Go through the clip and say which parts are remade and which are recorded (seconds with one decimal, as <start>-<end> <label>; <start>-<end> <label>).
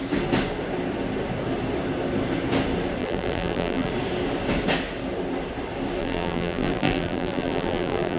0.0-3.0 recorded; 3.0-3.9 remade; 3.9-6.0 recorded; 6.0-8.2 remade